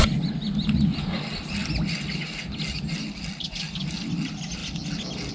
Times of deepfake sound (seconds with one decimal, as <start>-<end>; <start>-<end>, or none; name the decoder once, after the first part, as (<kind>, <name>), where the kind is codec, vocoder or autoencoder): none